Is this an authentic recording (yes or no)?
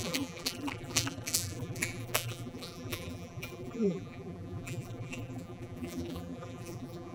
no